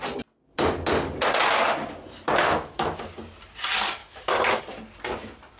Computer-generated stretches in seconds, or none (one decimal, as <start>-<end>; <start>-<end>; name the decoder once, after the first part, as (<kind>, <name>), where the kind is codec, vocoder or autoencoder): 2.4-2.9 (autoencoder, DAC-VAE); 4.0-4.6